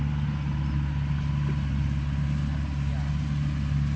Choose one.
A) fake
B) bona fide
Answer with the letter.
B